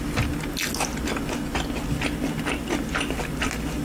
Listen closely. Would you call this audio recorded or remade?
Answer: recorded